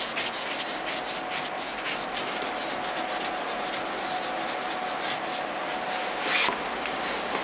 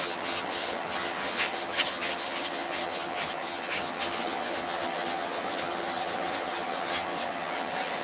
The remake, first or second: second